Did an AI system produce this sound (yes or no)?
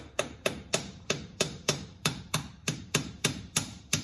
yes